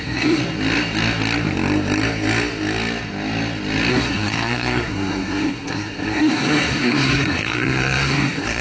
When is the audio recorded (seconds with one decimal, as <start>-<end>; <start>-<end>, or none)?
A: 0.4-3.9